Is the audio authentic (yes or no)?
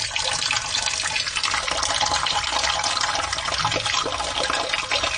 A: yes